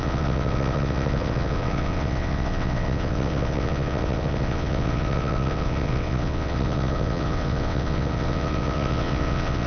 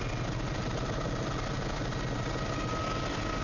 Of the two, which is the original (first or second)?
second